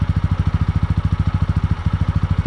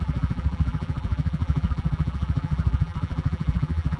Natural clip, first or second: first